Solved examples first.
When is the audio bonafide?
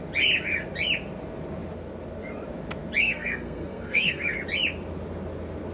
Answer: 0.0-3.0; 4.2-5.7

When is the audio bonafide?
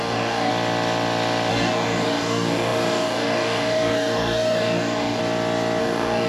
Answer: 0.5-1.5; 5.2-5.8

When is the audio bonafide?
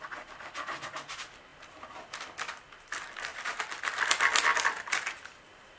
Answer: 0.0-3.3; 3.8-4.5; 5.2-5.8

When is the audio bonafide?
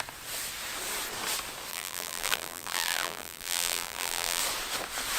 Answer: 0.0-1.7; 4.4-5.2